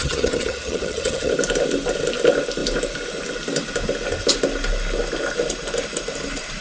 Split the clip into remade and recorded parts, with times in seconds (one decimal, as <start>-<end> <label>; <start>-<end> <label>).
0.0-1.3 remade; 1.3-6.6 recorded